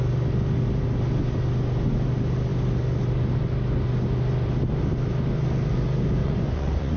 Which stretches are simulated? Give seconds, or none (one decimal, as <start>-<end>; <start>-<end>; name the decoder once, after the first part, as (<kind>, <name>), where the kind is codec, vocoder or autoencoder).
6.2-7.0 (vocoder, Vocos)